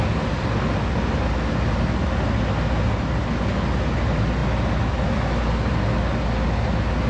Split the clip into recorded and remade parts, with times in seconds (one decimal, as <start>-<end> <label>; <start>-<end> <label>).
0.0-7.1 recorded